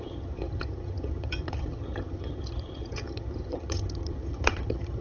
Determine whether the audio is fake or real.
fake